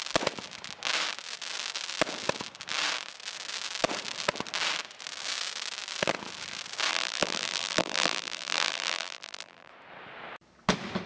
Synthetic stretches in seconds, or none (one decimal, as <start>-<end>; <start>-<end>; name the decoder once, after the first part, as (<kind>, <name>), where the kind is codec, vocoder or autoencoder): 6.9-9.7 (vocoder, BigVGAN v2)